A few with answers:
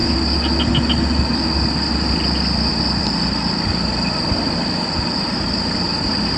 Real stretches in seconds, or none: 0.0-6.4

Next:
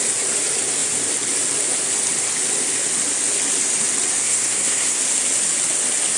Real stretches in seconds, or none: 0.0-4.2; 5.0-6.2

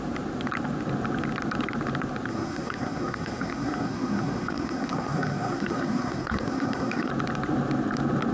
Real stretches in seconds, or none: 0.0-2.3; 7.1-8.3